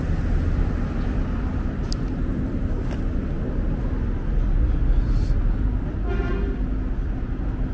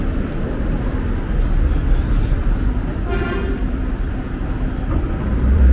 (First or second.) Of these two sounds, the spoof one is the second